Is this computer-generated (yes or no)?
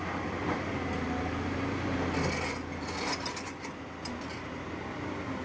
no